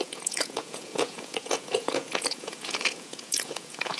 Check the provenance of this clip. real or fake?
fake